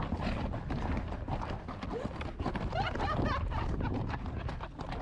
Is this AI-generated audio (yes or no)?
no